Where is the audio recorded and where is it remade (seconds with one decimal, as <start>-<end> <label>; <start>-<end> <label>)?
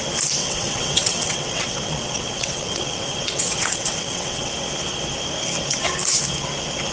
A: 0.0-0.4 recorded; 0.4-4.5 remade; 4.5-6.9 recorded